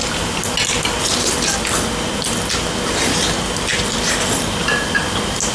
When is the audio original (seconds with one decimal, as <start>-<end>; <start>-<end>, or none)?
0.0-5.5